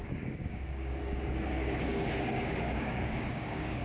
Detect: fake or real fake